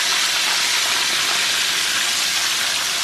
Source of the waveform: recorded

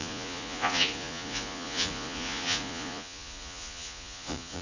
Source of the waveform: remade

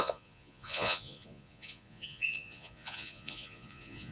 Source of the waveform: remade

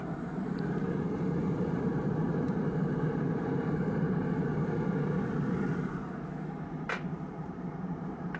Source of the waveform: remade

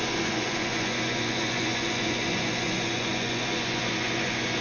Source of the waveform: remade